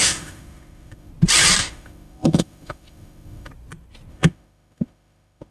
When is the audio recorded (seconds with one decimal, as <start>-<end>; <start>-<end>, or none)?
1.1-1.6; 3.5-4.1

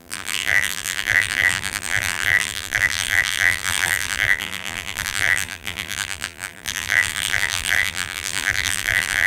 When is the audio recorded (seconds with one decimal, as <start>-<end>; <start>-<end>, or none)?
none

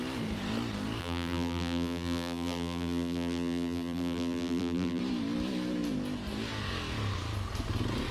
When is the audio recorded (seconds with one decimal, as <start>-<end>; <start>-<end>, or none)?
0.0-1.0; 5.0-8.1

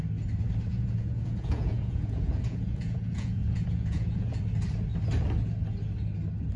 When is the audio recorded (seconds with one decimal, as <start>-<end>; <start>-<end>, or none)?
0.0-0.7; 4.4-6.6